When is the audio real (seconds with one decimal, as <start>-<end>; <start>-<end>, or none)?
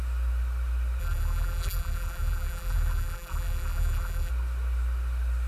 0.0-1.0; 4.3-5.5